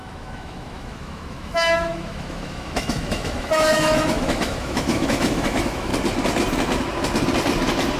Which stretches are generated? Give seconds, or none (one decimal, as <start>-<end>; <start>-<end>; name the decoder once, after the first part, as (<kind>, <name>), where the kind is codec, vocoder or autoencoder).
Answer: 0.0-5.9 (autoencoder, DAC-VAE)